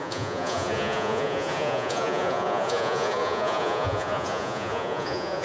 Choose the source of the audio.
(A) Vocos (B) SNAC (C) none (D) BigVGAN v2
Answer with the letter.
A